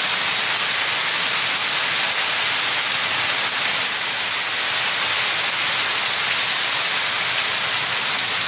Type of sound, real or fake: real